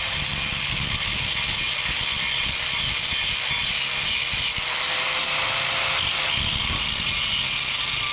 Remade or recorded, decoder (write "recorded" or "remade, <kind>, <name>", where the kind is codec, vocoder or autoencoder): recorded